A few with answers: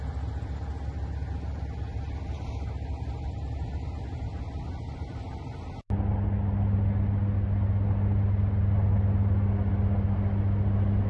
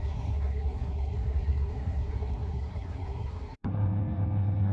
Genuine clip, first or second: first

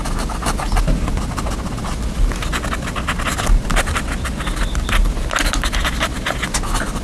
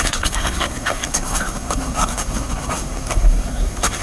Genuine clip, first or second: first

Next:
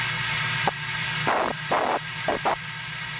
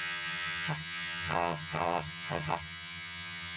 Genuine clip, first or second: first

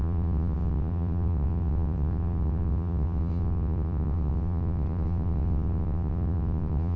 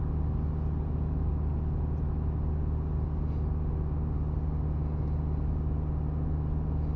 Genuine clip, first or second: second